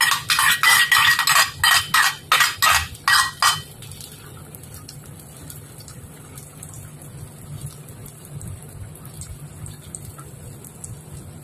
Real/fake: real